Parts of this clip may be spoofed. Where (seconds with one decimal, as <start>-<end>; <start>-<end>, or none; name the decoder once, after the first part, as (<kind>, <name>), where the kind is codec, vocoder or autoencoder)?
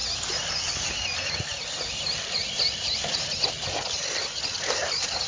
none